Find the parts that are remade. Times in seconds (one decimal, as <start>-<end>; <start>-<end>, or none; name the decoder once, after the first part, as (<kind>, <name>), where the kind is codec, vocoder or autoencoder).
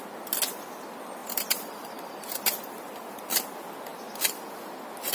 1.2-3.4 (vocoder, BigVGAN v2); 3.9-4.5